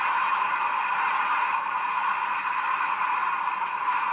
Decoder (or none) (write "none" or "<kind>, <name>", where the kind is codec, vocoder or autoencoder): none